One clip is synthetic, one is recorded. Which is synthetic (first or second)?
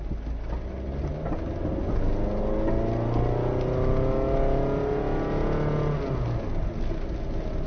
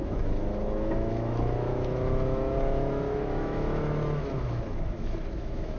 second